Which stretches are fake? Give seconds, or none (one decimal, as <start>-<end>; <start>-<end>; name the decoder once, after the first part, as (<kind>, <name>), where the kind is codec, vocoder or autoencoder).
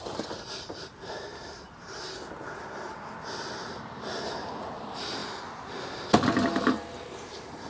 none